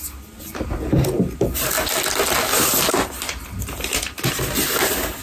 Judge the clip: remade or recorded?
recorded